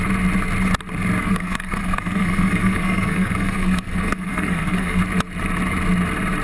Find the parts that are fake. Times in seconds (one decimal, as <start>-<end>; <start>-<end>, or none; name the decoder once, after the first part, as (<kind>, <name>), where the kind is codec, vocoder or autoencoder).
1.2-5.0 (codec, SNAC)